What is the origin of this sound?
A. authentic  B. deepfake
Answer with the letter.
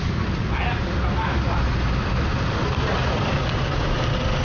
A